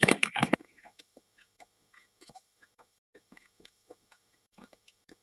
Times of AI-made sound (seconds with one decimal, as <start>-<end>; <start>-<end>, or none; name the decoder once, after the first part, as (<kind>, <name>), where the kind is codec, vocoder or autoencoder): 0.0-5.2 (autoencoder, DAC-VAE)

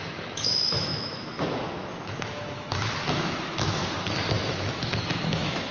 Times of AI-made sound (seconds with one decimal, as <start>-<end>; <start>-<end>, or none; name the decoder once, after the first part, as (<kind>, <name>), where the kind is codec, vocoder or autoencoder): 0.0-3.8 (autoencoder, DAC-VAE); 4.5-5.7

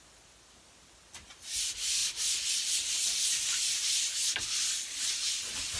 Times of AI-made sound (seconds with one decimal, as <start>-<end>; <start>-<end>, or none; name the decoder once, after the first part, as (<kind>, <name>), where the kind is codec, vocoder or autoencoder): none